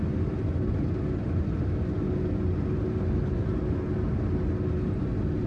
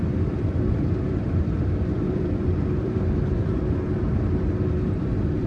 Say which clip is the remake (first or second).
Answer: second